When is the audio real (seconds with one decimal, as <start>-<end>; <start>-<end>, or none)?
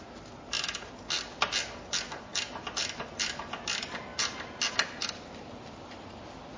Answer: 0.0-6.6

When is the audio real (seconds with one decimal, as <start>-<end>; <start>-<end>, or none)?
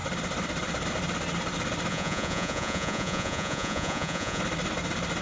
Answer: 0.0-1.9; 4.4-5.2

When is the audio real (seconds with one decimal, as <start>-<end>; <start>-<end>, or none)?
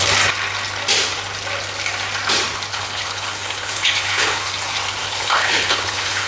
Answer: 0.0-2.7; 4.5-5.0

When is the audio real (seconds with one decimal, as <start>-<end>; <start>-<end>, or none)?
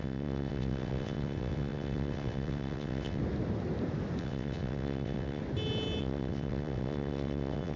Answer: 3.2-4.2; 5.4-6.0